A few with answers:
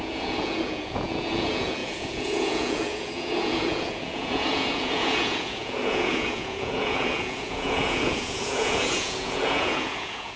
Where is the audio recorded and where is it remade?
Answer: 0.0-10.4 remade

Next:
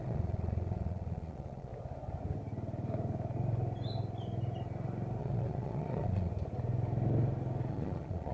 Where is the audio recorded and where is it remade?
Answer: 0.0-1.7 remade; 1.7-5.2 recorded; 5.2-6.3 remade; 6.3-7.7 recorded; 7.7-8.3 remade

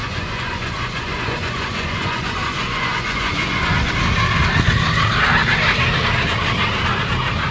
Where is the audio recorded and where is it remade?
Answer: 0.0-3.9 remade; 3.9-7.5 recorded

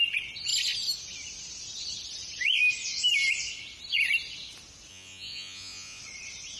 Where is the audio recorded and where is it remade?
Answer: 0.0-4.9 recorded; 4.9-6.0 remade; 6.0-6.6 recorded